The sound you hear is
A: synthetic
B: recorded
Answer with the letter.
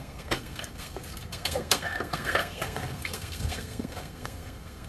A